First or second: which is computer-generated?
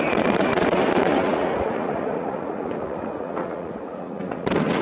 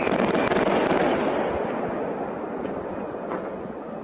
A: first